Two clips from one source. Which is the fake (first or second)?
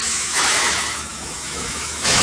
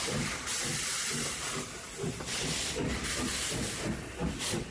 first